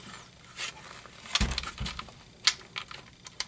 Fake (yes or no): no